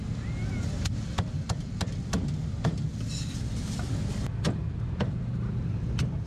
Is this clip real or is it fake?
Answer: real